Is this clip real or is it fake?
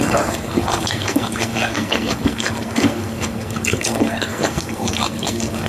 fake